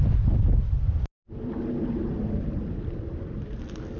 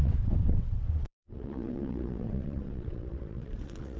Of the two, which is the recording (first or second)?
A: first